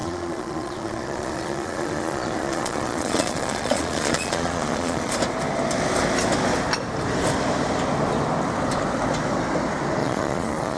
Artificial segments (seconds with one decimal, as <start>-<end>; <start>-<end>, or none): 0.0-5.1; 10.0-10.8